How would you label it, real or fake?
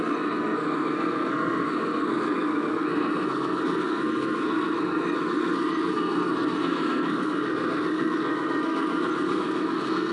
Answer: fake